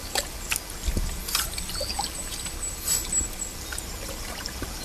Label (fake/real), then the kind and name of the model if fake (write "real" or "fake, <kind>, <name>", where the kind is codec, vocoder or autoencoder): real